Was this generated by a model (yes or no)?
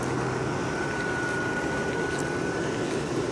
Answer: no